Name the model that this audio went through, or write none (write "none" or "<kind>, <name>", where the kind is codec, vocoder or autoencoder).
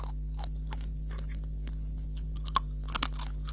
none